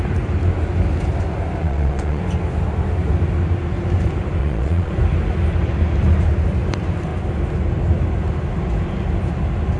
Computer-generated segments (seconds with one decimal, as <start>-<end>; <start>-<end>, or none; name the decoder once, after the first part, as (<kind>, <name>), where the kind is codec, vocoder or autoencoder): 1.6-2.2 (vocoder, Vocos); 4.4-4.9